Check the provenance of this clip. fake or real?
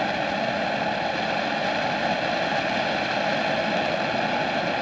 real